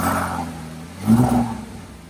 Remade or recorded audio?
recorded